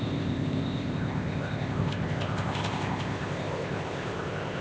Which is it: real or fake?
fake